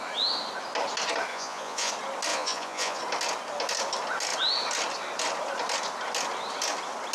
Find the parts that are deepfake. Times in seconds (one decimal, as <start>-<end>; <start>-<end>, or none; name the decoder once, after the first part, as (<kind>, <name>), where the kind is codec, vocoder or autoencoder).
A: 1.3-1.9 (vocoder, Vocos); 2.3-3.0